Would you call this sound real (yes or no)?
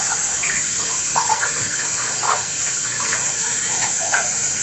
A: no